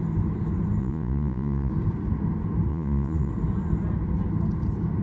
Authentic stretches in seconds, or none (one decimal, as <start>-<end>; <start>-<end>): 0.0-0.8; 1.7-2.7; 3.3-5.0